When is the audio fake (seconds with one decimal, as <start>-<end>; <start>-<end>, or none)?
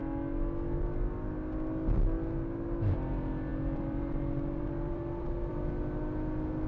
3.5-5.7